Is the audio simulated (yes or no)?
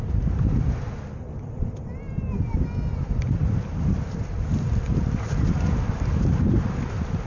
no